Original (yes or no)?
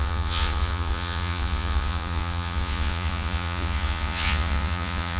no